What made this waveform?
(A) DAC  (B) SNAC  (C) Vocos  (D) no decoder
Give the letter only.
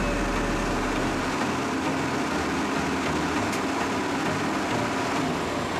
D